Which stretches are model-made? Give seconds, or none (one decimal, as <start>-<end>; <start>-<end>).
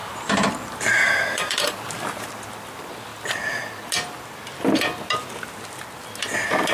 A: 0.0-2.3